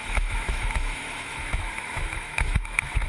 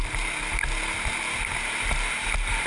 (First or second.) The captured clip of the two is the second